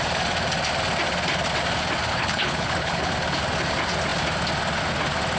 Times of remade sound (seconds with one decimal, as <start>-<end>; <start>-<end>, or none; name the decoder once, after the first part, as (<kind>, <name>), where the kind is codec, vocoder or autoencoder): 2.1-3.1 (codec, HILCodec)